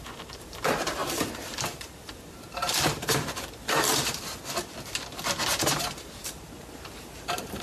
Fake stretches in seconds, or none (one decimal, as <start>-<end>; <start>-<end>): 0.0-3.9; 5.4-7.6